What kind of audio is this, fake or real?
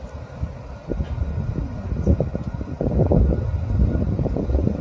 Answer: real